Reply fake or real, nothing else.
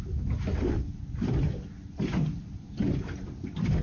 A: real